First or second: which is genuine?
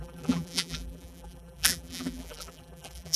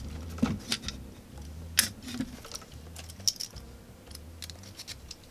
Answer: second